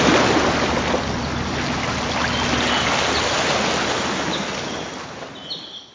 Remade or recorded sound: recorded